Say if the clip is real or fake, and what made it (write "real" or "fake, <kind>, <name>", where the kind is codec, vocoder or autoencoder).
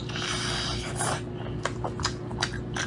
real